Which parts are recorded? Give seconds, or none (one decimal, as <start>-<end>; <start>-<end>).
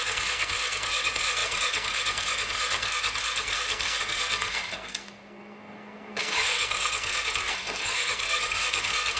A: none